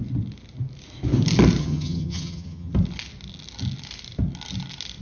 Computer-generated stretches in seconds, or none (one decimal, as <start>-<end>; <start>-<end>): 1.6-2.7